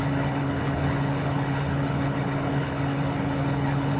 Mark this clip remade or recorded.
remade